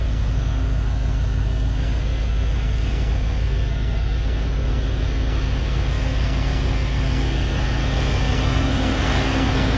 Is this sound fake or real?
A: fake